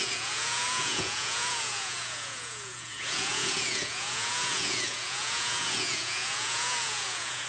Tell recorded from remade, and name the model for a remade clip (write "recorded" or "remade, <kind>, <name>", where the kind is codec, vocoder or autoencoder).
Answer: remade, vocoder, Vocos